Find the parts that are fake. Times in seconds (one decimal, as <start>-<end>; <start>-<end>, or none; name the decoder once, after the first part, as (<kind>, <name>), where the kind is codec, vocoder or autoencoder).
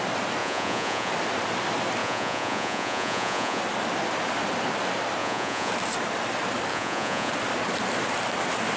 0.4-1.1 (vocoder, Vocos); 2.0-3.6; 5.2-5.7; 6.7-7.3